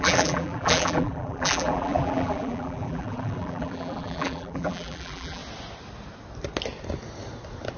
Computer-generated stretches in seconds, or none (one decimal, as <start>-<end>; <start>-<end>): 0.0-5.4